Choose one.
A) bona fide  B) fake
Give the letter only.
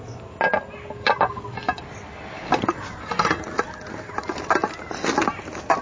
A